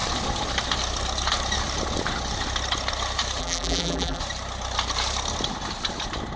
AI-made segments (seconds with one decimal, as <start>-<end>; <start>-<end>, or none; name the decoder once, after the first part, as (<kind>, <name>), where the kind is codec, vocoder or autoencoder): 3.4-4.2 (vocoder, BigVGAN v2)